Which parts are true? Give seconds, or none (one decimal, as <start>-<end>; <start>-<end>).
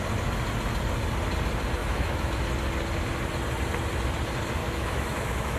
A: 0.0-1.8; 2.4-4.6